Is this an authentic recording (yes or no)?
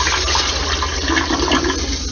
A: yes